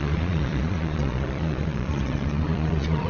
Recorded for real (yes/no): no